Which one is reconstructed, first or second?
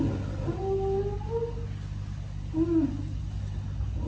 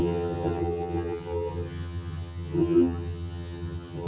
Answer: second